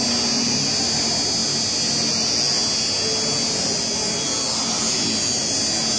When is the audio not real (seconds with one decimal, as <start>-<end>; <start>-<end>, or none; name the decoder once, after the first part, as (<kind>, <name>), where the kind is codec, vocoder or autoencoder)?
none